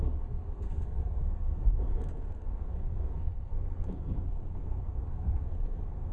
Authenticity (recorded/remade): remade